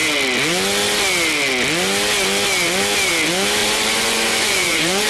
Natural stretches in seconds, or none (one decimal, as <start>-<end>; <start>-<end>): 0.0-3.6

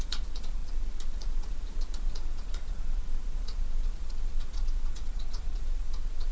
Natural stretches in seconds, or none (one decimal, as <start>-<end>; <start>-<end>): none

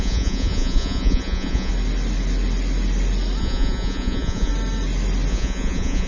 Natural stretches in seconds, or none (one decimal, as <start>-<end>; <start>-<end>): 1.7-3.4; 4.5-5.3

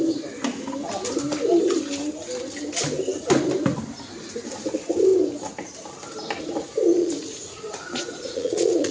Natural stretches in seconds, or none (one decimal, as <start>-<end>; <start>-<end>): 0.0-7.0

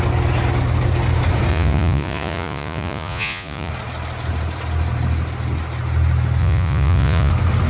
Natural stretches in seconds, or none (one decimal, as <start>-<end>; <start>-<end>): 0.0-1.5; 3.7-6.4; 7.3-7.7

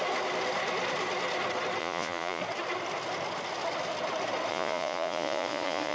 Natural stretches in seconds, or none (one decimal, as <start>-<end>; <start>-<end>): 0.0-1.8; 2.4-4.5

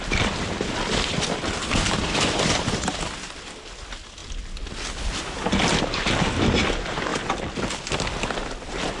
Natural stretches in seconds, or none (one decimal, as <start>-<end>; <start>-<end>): 0.0-9.0

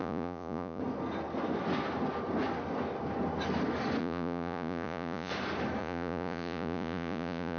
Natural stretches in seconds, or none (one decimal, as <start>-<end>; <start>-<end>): 0.8-4.0; 5.3-5.8